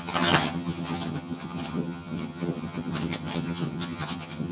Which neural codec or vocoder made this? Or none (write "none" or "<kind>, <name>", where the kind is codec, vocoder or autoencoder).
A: vocoder, HiFi-GAN